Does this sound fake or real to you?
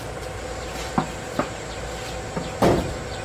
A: real